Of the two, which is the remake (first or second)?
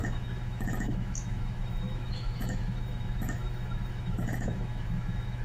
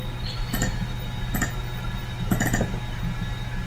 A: first